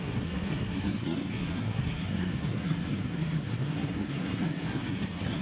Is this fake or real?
fake